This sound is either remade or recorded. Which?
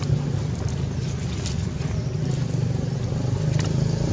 recorded